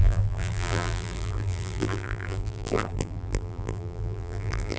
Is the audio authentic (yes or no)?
no